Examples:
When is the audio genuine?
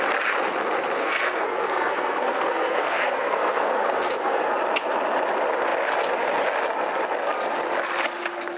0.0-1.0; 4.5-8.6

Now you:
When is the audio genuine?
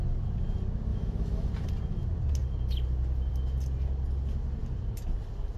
0.0-0.9; 1.5-5.6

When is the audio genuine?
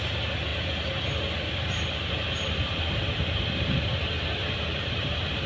0.0-0.5; 2.1-2.6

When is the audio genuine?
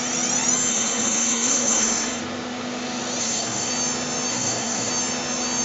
0.0-0.7; 2.2-3.2; 3.7-4.3; 4.9-5.6